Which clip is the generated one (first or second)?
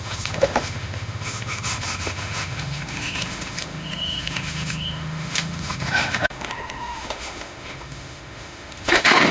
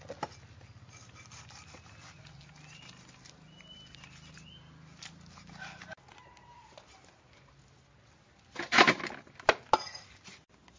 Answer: first